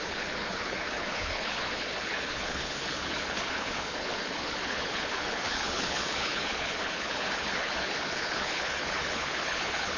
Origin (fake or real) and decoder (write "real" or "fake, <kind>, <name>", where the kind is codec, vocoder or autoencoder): fake, codec, HILCodec